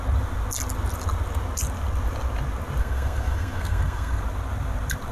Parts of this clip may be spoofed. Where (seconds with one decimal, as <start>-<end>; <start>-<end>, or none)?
2.8-4.2